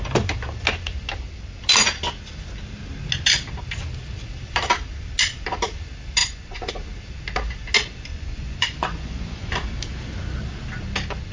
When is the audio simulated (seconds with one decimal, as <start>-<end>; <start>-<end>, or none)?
6.2-6.7; 8.1-9.5